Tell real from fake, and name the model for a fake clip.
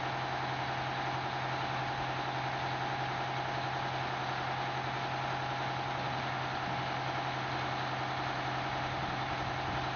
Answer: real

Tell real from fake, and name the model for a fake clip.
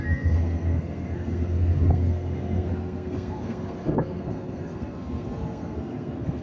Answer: fake, codec, SNAC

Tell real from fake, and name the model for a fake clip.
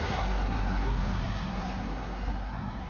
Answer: fake, codec, SNAC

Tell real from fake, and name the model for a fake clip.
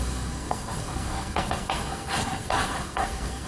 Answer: fake, codec, SNAC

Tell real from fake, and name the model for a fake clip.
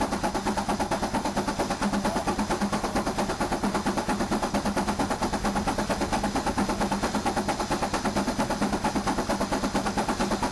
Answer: real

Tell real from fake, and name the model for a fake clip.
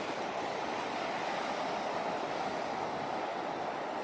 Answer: real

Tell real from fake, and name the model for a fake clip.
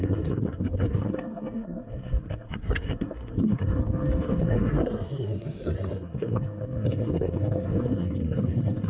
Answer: fake, codec, SNAC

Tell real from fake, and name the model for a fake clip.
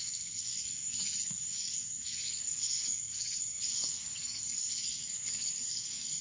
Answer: fake, codec, SNAC